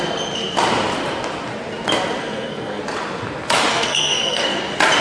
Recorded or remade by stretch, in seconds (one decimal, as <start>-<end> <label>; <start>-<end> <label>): 0.0-2.2 recorded; 2.2-2.8 remade; 2.8-3.7 recorded; 3.7-4.6 remade; 4.6-5.0 recorded